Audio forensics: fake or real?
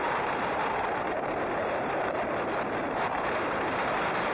fake